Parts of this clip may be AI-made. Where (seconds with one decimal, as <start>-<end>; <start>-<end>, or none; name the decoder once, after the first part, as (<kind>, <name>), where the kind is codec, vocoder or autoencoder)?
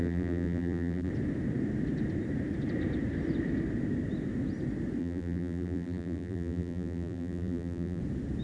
0.0-1.1 (vocoder, BigVGAN v2); 5.0-8.0